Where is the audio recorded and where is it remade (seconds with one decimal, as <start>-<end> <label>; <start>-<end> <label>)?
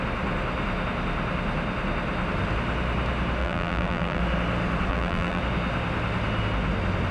0.0-3.4 recorded; 3.4-4.2 remade; 4.2-4.9 recorded; 4.9-5.4 remade; 5.4-7.1 recorded